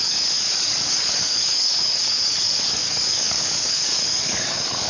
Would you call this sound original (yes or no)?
no